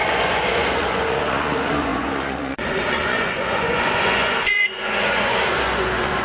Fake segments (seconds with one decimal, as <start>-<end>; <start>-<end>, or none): 0.0-6.2

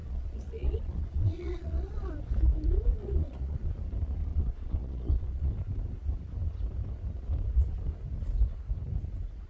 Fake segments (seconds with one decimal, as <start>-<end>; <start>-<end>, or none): 0.0-2.1; 3.0-3.7; 4.3-5.5

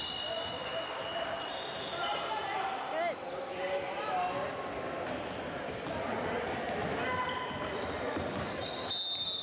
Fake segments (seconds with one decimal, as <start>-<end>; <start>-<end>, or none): none

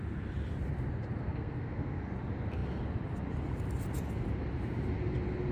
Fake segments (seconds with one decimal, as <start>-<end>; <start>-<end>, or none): 1.2-2.0